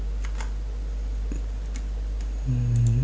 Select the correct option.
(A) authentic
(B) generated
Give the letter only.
A